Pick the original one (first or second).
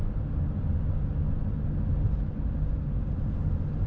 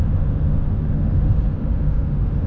first